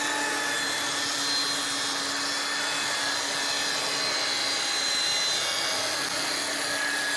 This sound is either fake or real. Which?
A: real